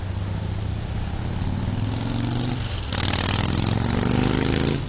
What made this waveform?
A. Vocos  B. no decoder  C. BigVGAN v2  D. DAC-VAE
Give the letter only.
B